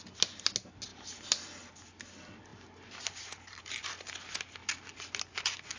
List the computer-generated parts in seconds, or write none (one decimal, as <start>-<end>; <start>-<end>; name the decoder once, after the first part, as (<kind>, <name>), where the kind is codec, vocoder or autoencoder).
none